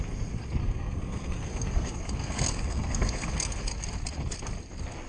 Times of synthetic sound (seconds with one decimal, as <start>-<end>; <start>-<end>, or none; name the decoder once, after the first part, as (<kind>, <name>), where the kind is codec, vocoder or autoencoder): 0.6-3.7 (codec, SNAC)